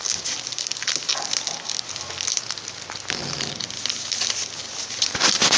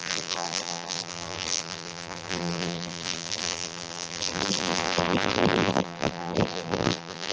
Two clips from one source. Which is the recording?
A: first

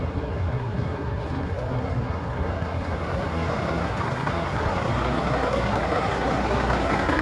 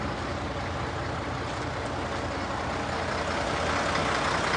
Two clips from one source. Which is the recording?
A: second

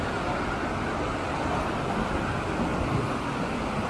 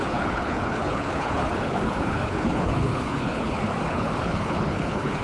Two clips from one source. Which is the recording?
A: first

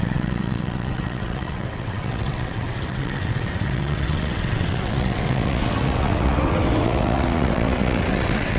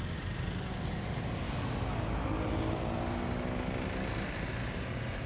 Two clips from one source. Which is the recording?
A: second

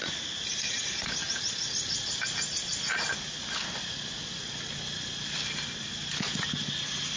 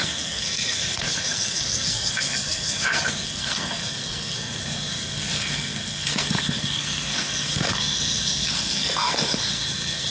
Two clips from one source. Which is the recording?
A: first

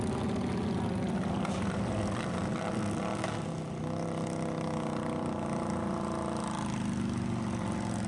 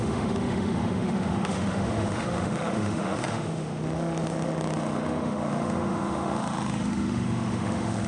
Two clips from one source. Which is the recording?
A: first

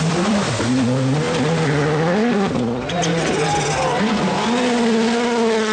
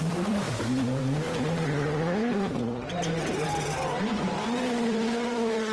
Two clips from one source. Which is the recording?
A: first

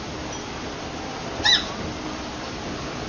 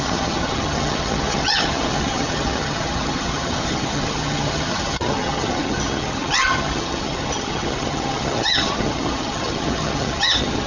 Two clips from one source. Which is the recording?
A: first